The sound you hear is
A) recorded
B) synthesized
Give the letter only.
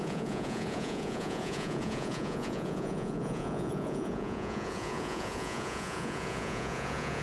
B